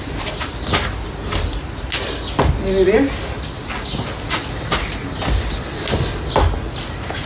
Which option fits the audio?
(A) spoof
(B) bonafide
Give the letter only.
B